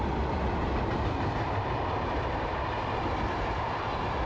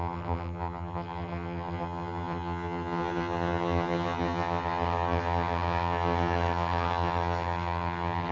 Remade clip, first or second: second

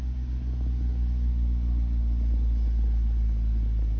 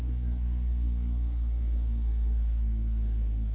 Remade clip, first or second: second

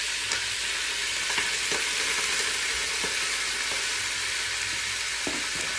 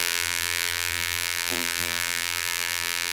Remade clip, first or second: second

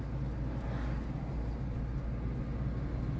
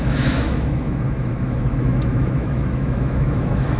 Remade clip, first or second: second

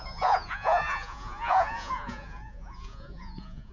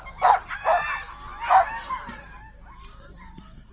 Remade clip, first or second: first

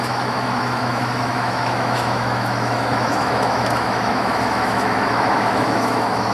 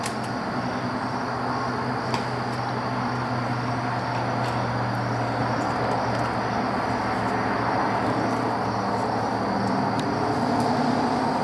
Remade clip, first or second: first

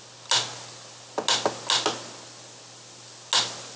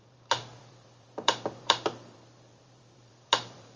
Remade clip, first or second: second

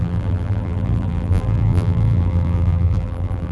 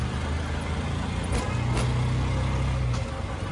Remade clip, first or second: first